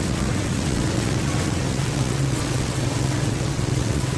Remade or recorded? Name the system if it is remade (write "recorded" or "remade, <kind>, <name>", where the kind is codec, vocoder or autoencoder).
remade, vocoder, WaveNeXt